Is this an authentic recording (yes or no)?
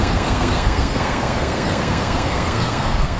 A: no